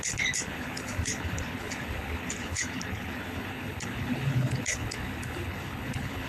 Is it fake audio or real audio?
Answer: fake